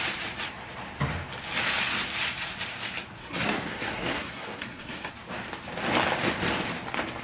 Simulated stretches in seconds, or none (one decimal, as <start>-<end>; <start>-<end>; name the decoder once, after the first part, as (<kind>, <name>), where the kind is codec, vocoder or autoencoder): 3.2-5.1 (codec, SNAC)

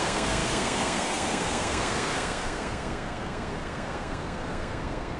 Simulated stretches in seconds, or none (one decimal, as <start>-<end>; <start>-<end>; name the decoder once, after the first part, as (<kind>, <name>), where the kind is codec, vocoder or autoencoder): 0.0-5.2 (codec, SNAC)